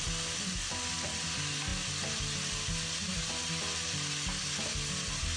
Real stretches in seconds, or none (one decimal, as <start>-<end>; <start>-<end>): 0.0-5.4